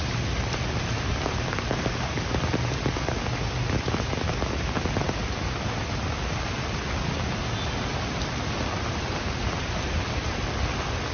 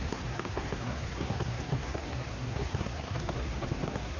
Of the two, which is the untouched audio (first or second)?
first